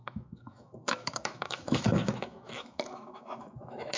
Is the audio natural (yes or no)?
no